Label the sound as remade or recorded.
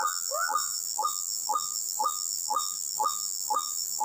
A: remade